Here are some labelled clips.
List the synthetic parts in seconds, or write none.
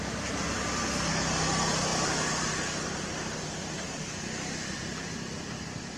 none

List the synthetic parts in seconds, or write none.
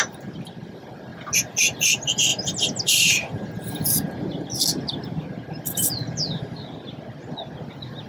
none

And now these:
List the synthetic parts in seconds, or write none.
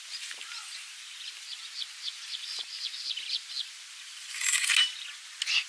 none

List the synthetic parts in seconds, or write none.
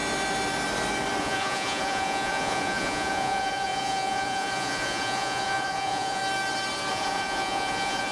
1.2-6.2 (vocoder, Vocos); 6.9-8.1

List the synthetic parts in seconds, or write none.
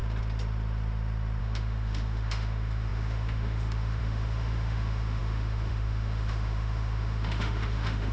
1.4-8.1 (autoencoder, DAC-VAE)